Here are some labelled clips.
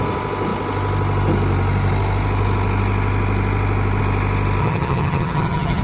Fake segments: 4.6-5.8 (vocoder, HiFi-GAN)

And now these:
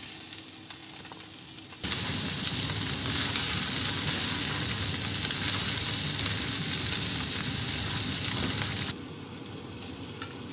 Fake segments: none

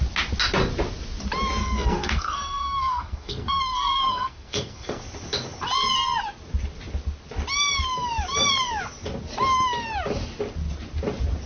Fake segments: 1.6-5.0 (codec, SNAC)